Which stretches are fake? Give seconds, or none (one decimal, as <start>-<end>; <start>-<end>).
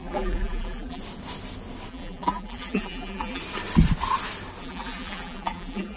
0.0-1.0; 1.9-3.4; 4.6-6.0